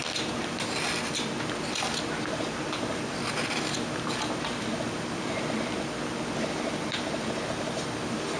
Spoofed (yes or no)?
no